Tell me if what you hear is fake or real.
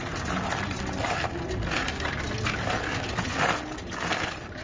real